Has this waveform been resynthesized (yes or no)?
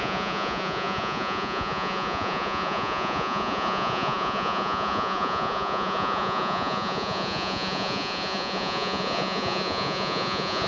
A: yes